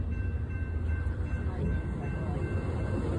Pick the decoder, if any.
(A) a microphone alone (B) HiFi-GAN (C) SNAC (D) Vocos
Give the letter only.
A